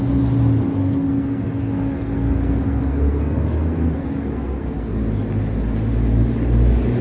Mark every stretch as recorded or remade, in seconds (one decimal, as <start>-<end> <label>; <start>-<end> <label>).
0.0-0.8 recorded; 0.8-5.0 remade; 5.0-7.0 recorded

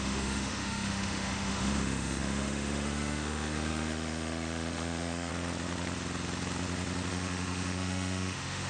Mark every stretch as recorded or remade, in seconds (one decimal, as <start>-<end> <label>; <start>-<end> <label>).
0.0-5.3 remade; 5.3-7.1 recorded; 7.1-8.7 remade

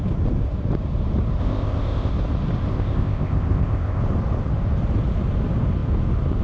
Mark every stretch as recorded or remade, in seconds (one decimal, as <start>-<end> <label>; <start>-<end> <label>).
0.0-1.4 recorded; 1.4-2.1 remade; 2.1-2.7 recorded; 2.7-4.0 remade; 4.0-6.4 recorded

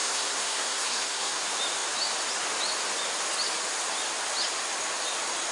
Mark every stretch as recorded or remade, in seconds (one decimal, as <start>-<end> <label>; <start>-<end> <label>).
0.0-1.4 remade; 1.4-5.5 recorded

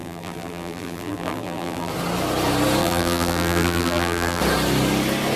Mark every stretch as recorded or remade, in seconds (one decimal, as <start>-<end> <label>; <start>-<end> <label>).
0.0-1.9 remade; 1.9-2.8 recorded; 2.8-4.4 remade; 4.4-5.4 recorded

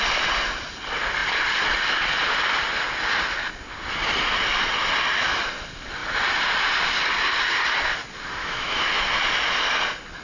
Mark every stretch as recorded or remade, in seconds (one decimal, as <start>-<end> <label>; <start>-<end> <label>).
0.0-8.4 recorded; 8.4-9.1 remade; 9.1-10.2 recorded

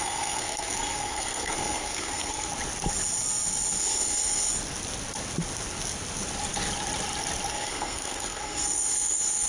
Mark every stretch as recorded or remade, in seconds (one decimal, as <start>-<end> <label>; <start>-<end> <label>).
0.0-2.5 remade; 2.5-3.8 recorded; 3.8-4.5 remade; 4.5-7.5 recorded; 7.5-9.5 remade

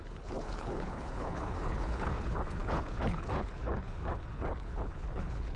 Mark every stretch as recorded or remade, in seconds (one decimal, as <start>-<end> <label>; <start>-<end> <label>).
0.0-5.6 remade